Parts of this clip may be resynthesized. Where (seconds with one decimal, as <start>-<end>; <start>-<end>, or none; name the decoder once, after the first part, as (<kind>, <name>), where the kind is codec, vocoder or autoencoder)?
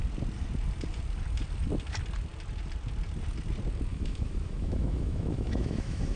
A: 3.9-6.2 (autoencoder, DAC-VAE)